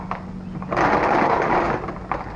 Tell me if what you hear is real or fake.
real